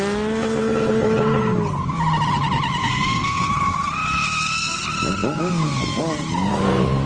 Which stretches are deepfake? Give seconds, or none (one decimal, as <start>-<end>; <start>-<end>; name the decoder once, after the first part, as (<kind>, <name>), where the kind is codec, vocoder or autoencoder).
2.8-3.5 (codec, SNAC)